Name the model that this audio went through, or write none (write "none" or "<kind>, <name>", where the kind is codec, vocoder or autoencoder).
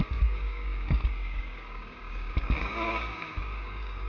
codec, DAC